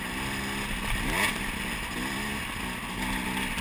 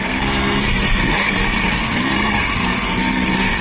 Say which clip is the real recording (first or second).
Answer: first